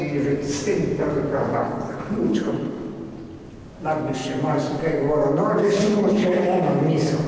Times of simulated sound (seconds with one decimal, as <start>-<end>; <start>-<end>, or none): 1.6-2.7; 5.6-6.4